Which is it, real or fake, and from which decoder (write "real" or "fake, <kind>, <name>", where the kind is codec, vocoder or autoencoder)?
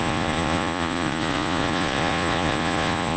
fake, vocoder, Vocos